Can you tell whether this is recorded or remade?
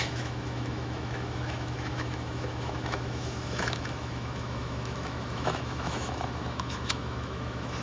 remade